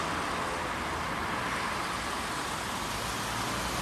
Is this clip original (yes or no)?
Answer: yes